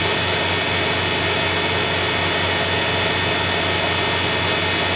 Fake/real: real